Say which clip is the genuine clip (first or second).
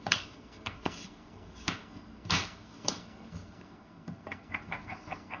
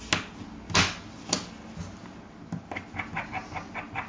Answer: second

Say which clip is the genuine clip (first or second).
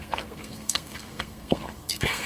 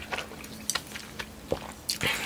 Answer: second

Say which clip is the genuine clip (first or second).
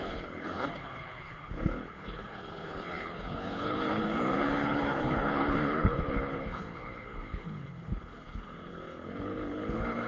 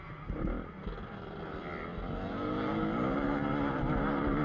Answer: second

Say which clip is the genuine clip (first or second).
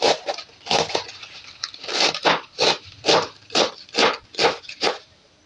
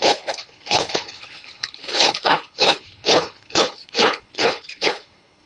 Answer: first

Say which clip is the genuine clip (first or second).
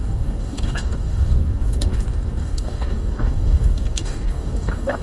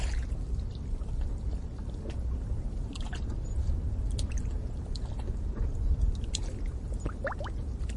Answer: second